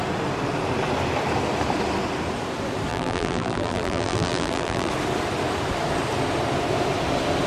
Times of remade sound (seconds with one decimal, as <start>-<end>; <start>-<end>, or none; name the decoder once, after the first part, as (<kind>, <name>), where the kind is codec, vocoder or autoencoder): 2.9-4.9 (vocoder, BigVGAN v2)